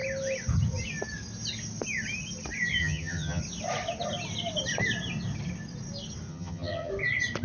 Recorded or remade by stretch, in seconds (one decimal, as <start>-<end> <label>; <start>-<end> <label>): 0.0-2.8 recorded; 2.8-3.4 remade; 3.4-6.3 recorded; 6.3-6.9 remade; 6.9-7.4 recorded